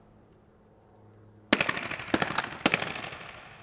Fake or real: real